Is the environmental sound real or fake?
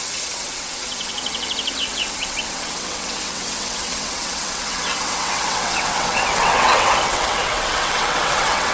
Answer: fake